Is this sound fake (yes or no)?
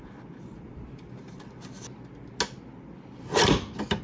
no